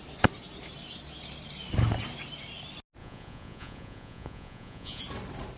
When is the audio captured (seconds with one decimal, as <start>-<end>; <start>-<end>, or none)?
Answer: 0.0-3.0; 5.0-5.6